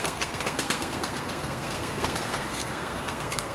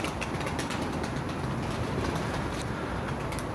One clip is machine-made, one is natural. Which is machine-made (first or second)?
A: first